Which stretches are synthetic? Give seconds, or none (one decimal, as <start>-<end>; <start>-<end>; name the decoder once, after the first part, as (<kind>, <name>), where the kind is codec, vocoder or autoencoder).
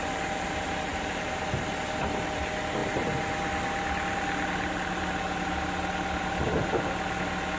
0.9-1.6 (vocoder, BigVGAN v2)